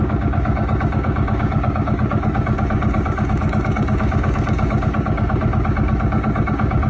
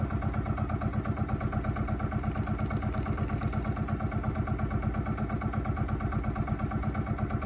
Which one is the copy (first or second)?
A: first